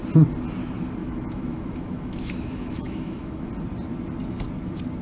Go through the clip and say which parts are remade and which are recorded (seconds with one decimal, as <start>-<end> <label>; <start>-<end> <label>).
0.0-1.0 recorded; 1.0-3.5 remade; 3.5-5.0 recorded